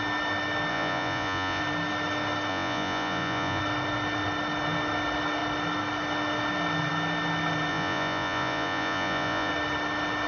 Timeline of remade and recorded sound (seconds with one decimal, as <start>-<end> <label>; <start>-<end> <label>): 0.0-0.7 recorded; 0.7-1.6 remade; 1.6-2.5 recorded; 2.5-3.6 remade; 3.6-7.7 recorded; 7.7-9.5 remade; 9.5-10.3 recorded